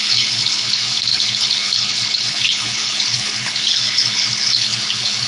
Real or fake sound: fake